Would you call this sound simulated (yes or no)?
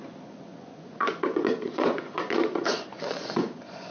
yes